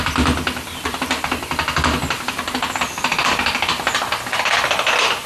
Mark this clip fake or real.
real